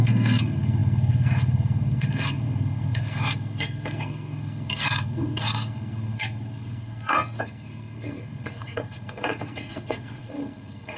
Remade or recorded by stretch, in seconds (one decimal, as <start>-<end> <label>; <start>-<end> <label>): 0.0-11.0 remade